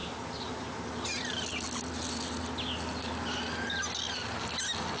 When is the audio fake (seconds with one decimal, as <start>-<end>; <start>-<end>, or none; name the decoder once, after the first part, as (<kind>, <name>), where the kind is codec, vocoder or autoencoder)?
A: none